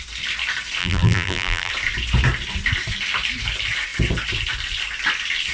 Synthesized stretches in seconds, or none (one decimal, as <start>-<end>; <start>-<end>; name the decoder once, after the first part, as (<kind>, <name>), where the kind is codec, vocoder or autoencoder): 0.8-1.7 (vocoder, BigVGAN v2)